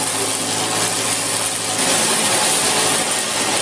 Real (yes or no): yes